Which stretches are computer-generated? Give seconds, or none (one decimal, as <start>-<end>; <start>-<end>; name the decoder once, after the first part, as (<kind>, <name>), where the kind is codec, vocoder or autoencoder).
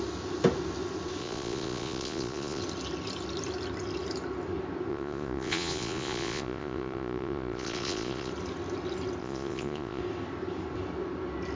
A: 1.2-2.6 (vocoder, Vocos); 4.9-8.3; 9.2-10.0